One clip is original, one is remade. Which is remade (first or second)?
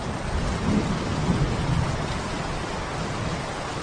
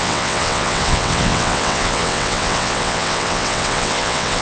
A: second